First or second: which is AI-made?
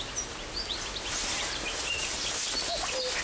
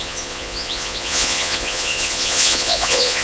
second